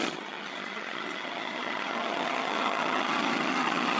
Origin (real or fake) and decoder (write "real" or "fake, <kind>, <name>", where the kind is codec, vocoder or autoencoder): fake, vocoder, HiFi-GAN